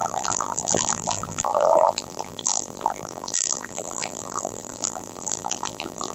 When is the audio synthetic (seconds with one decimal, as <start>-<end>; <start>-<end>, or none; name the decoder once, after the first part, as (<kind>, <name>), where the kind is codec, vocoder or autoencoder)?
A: 0.0-6.1 (vocoder, BigVGAN v2)